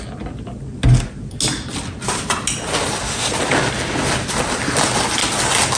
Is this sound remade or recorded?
recorded